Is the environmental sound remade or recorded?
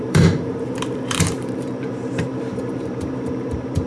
remade